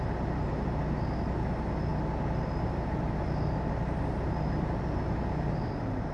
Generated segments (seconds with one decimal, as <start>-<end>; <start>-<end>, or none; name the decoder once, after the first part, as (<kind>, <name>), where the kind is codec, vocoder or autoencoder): none